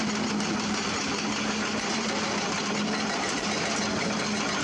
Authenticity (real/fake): real